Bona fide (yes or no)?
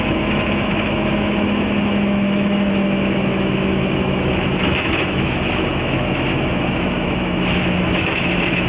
no